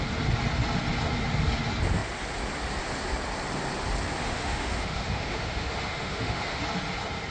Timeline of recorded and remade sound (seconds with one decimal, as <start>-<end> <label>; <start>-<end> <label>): 0.0-4.2 recorded; 4.2-6.6 remade; 6.6-7.3 recorded